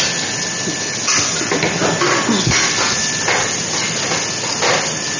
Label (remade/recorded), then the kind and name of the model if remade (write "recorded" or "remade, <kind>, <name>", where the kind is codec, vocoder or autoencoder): recorded